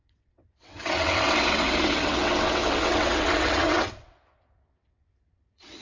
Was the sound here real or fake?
fake